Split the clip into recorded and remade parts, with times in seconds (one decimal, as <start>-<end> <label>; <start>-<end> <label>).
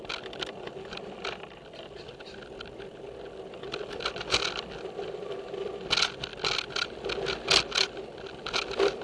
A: 0.0-9.0 recorded